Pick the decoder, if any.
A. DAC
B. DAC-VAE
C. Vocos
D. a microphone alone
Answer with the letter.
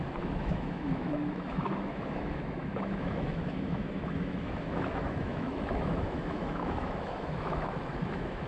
B